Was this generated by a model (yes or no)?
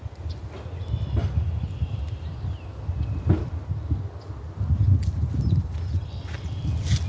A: no